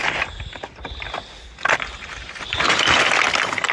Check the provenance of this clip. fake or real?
real